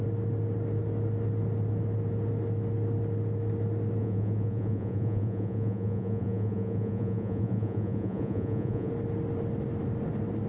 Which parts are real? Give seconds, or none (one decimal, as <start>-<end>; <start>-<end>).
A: 0.0-4.0; 8.9-10.5